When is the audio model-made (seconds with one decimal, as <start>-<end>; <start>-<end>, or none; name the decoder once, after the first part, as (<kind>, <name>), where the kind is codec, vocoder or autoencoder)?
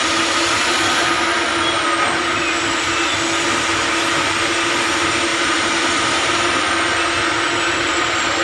5.3-6.5 (vocoder, BigVGAN v2)